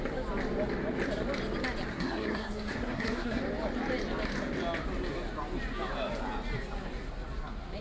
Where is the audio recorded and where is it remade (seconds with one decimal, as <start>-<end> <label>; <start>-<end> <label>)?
0.0-1.9 recorded; 1.9-3.4 remade; 3.4-7.8 recorded